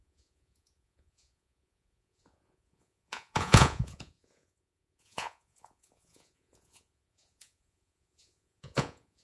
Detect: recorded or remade remade